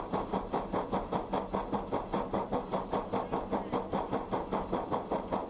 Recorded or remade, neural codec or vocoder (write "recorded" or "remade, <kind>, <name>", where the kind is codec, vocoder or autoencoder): recorded